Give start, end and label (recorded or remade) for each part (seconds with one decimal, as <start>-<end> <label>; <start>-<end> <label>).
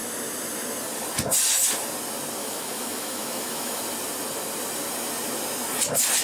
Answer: 0.0-2.4 recorded; 2.4-3.8 remade; 3.8-6.2 recorded